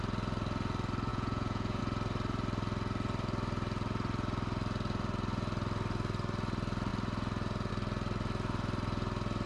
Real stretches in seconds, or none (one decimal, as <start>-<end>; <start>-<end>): 0.0-1.1; 1.8-9.5